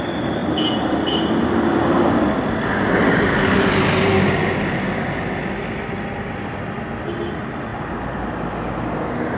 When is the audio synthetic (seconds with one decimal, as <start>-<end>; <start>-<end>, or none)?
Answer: none